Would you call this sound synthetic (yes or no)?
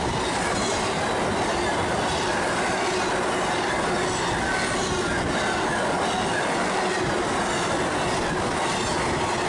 no